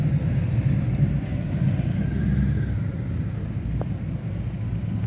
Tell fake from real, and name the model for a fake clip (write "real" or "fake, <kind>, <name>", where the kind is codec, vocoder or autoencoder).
real